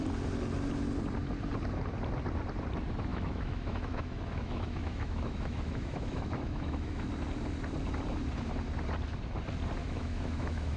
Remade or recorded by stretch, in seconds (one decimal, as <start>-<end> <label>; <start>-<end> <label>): 0.0-3.1 recorded; 3.1-7.1 remade; 7.1-9.8 recorded; 9.8-10.8 remade